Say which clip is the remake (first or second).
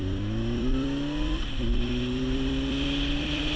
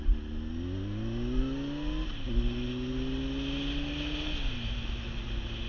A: first